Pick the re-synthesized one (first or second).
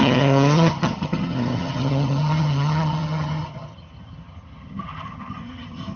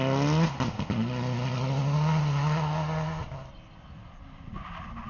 first